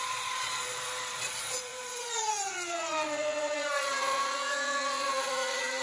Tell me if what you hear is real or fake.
fake